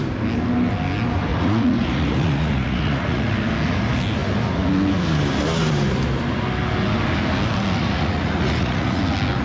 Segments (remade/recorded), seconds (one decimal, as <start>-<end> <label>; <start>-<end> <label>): 0.0-1.3 recorded; 1.3-3.2 remade; 3.2-7.8 recorded; 7.8-9.0 remade; 9.0-9.4 recorded